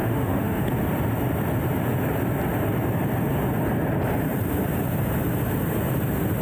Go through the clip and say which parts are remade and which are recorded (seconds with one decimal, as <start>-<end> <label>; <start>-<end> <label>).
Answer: 0.0-0.7 remade; 0.7-6.4 recorded